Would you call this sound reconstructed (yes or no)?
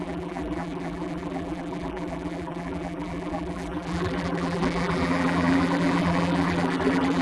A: yes